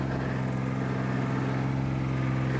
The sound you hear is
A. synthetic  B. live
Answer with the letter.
B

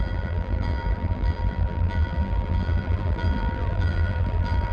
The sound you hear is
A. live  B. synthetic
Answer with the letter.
B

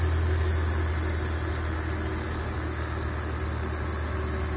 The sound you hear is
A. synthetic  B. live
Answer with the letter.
B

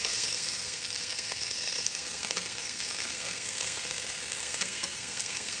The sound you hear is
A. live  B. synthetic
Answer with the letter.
B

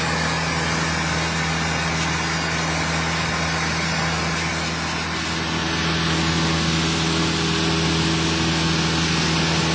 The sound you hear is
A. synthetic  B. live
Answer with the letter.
B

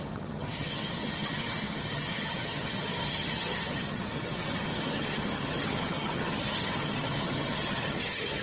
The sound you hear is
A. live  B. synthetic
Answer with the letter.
B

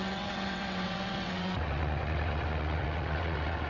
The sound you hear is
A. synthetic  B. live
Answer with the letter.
A